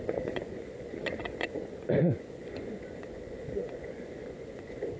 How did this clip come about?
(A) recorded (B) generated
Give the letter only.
B